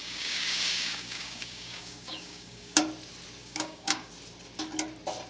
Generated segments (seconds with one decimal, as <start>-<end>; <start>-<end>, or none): 0.0-2.8; 3.4-4.1